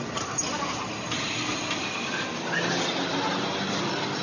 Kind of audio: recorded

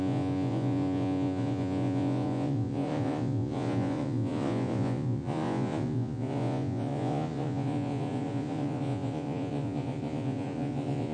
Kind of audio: remade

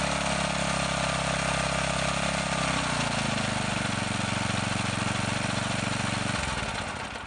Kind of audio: recorded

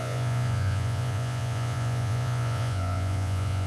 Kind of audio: remade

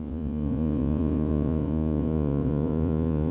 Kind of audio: remade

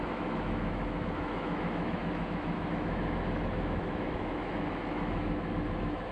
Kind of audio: remade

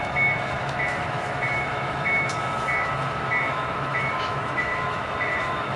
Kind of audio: remade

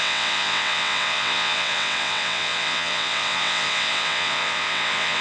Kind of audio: remade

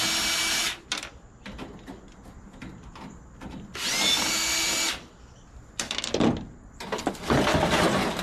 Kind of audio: recorded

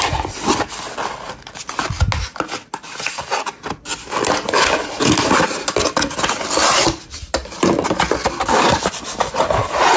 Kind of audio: recorded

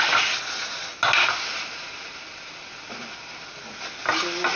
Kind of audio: recorded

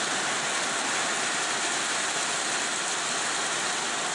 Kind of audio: recorded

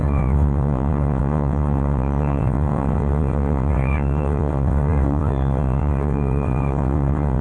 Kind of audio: remade